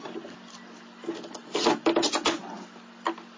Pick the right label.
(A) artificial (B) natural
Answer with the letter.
B